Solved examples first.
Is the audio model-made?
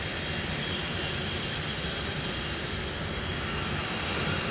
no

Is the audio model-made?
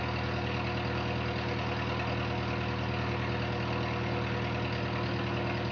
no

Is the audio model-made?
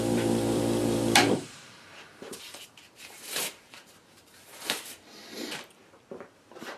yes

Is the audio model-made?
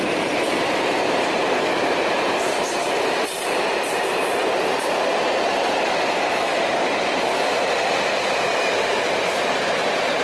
yes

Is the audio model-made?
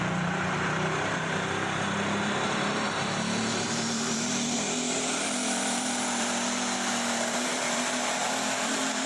yes